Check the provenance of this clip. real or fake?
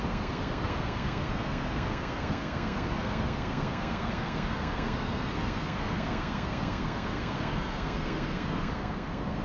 fake